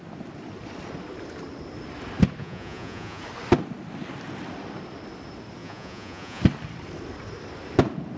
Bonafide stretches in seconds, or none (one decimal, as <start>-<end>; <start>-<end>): 0.0-2.4; 3.2-5.6; 6.4-8.2